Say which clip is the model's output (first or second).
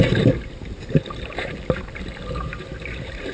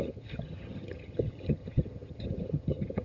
second